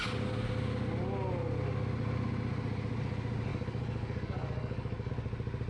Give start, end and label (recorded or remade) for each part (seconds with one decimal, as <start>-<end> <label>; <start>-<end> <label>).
0.0-3.5 recorded; 3.5-5.1 remade; 5.1-5.7 recorded